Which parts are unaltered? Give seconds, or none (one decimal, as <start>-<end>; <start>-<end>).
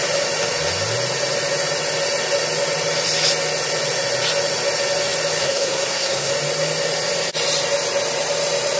0.0-5.4; 6.3-8.8